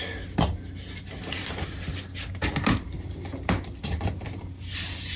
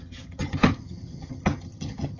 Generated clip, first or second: second